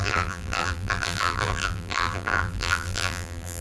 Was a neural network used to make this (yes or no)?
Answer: yes